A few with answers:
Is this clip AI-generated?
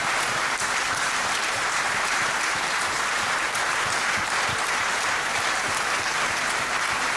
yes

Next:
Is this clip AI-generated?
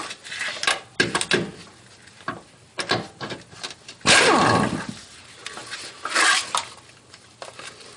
no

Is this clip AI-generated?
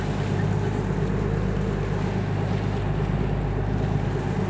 no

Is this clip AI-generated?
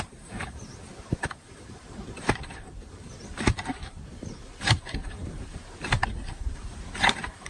yes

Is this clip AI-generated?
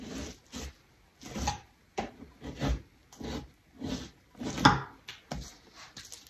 no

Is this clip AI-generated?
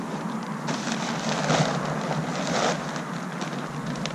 no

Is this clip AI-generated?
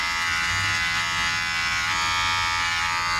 no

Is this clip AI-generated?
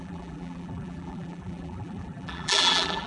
yes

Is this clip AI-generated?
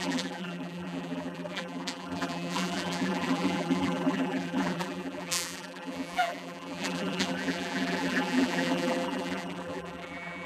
yes